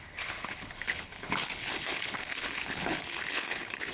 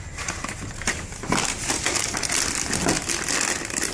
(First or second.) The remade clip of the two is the first